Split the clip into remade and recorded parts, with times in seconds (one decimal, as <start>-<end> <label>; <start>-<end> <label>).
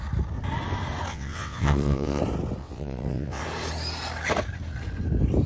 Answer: 0.0-1.1 recorded; 1.1-2.2 remade; 2.2-2.6 recorded; 2.6-3.4 remade; 3.4-5.5 recorded